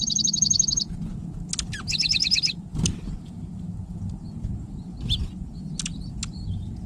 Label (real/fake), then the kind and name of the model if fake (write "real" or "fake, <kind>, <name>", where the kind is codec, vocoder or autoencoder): real